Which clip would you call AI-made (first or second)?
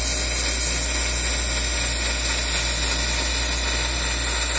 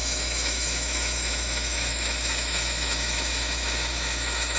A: second